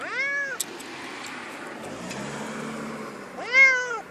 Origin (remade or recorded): recorded